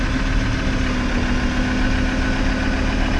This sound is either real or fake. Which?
real